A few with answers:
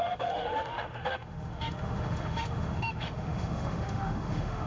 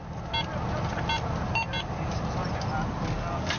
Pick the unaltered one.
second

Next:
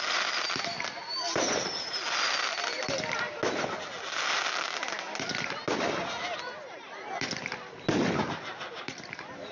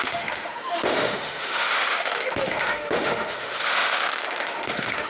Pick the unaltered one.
first